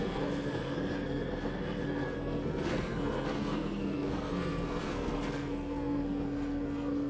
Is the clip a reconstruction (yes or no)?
yes